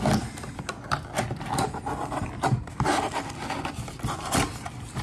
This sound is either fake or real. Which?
real